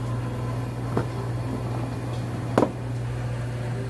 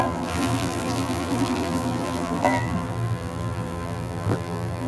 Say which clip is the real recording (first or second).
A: first